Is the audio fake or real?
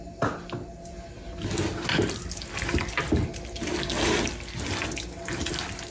real